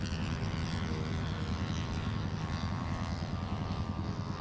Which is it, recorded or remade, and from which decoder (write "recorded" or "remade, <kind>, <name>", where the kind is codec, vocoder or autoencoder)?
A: recorded